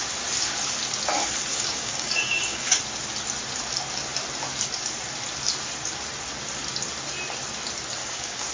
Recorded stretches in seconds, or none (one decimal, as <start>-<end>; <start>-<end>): 0.0-1.5; 2.8-8.0